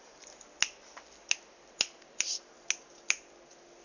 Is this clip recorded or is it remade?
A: recorded